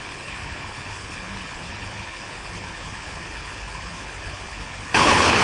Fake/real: fake